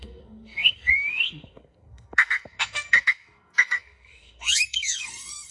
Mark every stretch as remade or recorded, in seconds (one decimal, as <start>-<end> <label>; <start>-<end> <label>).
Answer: 0.0-5.5 remade